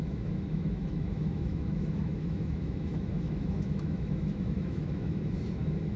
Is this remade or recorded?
remade